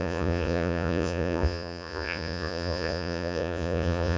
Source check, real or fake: fake